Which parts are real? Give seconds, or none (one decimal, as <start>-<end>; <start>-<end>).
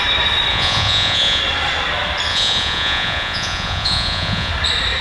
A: 0.0-0.5; 1.4-2.3; 4.5-5.0